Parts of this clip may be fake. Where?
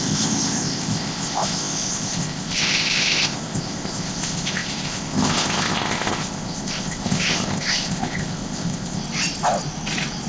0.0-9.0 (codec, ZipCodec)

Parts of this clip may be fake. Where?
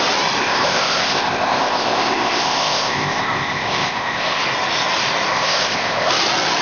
0.4-4.4 (codec, ZipCodec); 5.3-6.1